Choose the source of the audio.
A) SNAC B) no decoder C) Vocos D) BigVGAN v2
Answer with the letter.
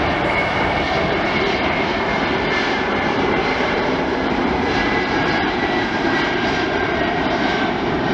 D